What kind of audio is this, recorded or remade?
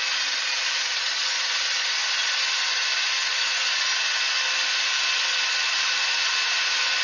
recorded